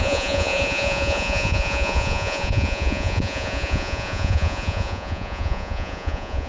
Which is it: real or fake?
fake